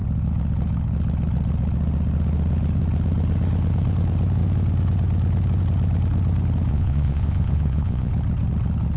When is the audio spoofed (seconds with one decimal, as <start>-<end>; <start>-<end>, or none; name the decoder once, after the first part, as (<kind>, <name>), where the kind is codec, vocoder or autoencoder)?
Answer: 6.7-8.1 (vocoder, Vocos)